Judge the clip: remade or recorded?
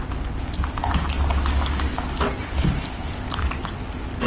recorded